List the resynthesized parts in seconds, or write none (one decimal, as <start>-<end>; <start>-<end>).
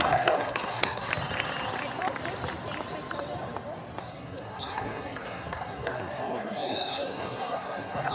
0.0-1.1; 4.0-8.1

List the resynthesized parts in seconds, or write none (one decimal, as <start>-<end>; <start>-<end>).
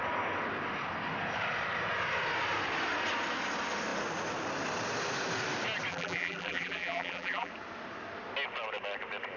5.9-7.5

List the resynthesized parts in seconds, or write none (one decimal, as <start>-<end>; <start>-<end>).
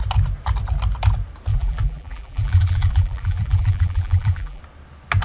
1.5-4.6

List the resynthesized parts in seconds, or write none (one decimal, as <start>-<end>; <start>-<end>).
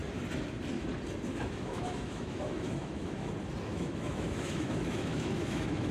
1.3-3.3; 3.7-5.9